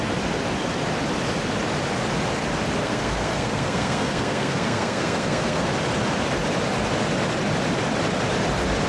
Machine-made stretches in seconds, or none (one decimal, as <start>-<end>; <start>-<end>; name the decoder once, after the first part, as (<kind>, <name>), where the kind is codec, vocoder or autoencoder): 2.8-5.7 (codec, SNAC)